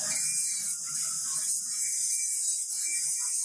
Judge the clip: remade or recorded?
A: recorded